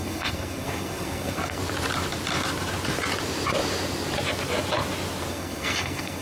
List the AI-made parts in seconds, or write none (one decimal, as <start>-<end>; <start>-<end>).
0.0-1.6; 5.3-6.2